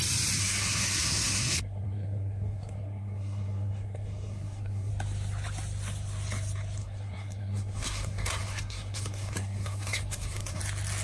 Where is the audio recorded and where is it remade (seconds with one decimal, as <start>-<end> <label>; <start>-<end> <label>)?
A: 0.0-0.4 recorded; 0.4-4.9 remade; 4.9-6.8 recorded; 6.8-10.6 remade; 10.6-11.0 recorded